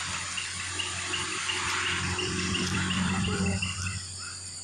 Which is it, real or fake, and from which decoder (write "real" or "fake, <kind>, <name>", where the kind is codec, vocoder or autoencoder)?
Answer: fake, vocoder, BigVGAN v2